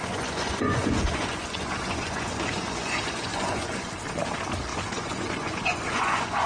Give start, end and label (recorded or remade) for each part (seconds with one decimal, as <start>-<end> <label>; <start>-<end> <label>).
0.0-3.9 remade; 3.9-4.7 recorded; 4.7-6.5 remade